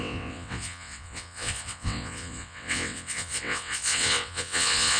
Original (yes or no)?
no